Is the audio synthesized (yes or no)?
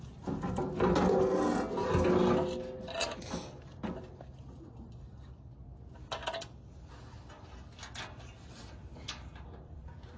no